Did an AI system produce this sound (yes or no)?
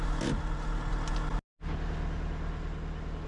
no